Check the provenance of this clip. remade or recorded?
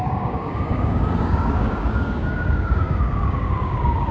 remade